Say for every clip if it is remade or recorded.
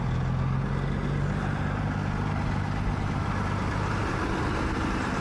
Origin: recorded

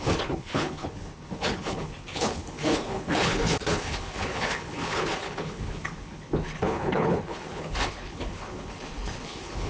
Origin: remade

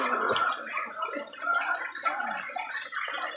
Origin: recorded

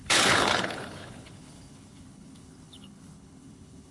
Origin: remade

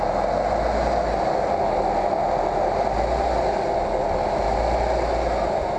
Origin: recorded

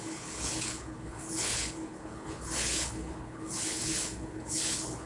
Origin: remade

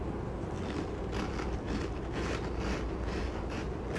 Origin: recorded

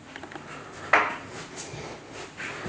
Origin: recorded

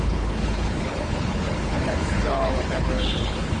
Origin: remade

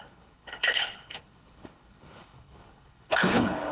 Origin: remade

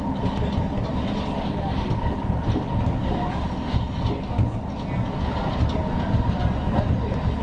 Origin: recorded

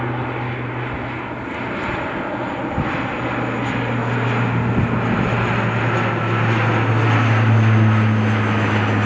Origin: recorded